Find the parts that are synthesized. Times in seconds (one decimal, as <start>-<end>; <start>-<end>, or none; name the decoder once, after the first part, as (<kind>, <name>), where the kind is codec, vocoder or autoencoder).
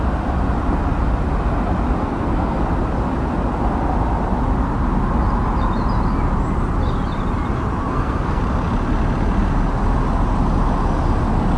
2.0-2.6 (codec, SNAC); 7.8-8.4